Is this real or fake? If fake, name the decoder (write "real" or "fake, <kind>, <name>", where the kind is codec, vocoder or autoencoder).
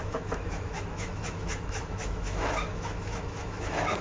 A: fake, autoencoder, DAC-VAE